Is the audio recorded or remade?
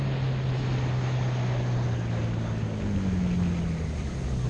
recorded